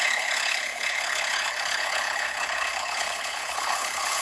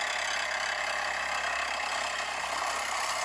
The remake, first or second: first